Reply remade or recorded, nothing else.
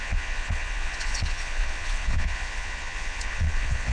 remade